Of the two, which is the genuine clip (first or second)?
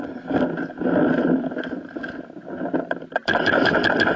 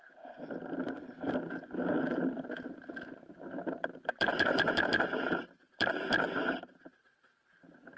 first